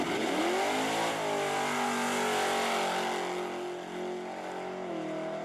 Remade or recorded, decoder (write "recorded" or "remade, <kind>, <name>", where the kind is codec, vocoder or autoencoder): recorded